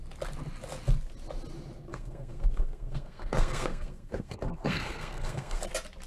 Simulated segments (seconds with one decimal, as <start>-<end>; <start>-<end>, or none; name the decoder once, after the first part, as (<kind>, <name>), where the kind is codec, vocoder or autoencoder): 1.9-5.6 (codec, SNAC)